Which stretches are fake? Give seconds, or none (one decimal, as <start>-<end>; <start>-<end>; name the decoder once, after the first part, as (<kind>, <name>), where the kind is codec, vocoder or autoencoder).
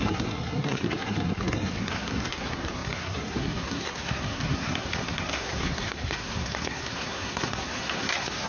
0.0-8.5 (codec, SNAC)